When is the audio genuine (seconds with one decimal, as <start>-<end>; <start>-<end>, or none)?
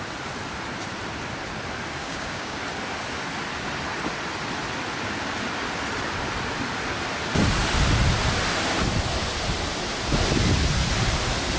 0.0-2.0; 2.6-11.6